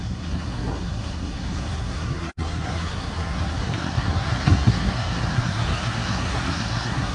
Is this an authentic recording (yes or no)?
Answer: no